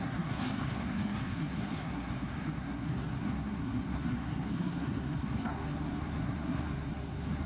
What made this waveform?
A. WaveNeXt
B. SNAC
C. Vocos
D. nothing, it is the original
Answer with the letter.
B